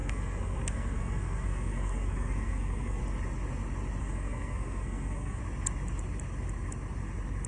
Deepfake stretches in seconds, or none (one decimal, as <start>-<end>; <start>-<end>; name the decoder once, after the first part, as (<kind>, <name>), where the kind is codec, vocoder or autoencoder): 0.0-3.0 (codec, SNAC); 4.0-5.4